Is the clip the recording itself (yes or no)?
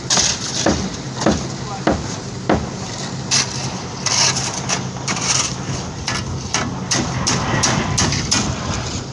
yes